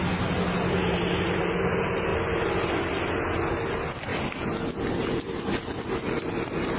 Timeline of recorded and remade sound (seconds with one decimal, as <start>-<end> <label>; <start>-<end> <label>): 0.0-0.8 recorded; 0.8-1.4 remade; 1.4-6.8 recorded